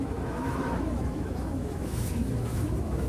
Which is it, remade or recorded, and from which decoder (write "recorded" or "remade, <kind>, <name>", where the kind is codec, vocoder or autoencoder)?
remade, autoencoder, DAC-VAE